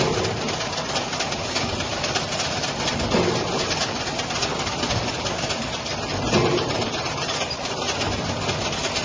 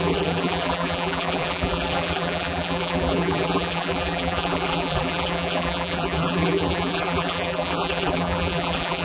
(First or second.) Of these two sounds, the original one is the first